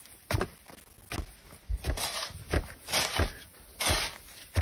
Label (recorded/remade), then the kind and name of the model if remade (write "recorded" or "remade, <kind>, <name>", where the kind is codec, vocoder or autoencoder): recorded